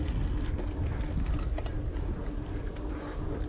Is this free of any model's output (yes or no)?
yes